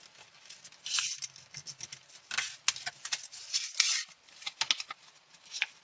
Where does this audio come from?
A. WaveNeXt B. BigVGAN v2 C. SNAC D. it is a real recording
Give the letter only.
D